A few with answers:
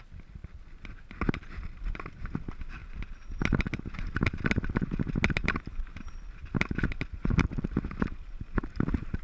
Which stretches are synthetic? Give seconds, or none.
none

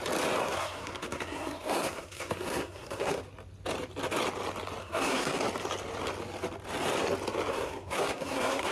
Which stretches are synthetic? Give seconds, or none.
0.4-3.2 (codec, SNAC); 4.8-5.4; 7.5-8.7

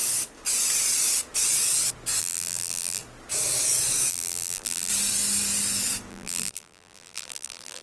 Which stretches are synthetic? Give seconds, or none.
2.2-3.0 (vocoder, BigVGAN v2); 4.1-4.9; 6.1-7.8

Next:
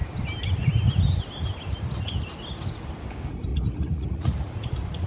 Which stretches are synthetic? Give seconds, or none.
3.5-5.1 (vocoder, Vocos)

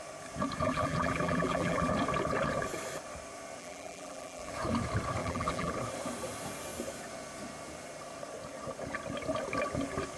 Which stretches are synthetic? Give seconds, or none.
0.6-1.9 (vocoder, BigVGAN v2); 3.6-4.5; 5.2-5.7

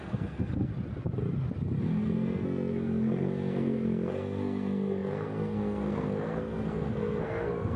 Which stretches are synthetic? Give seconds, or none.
0.0-0.7 (codec, SNAC); 1.8-7.8

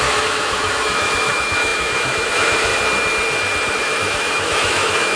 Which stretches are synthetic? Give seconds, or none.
0.0-2.7 (autoencoder, DAC-VAE); 3.7-5.2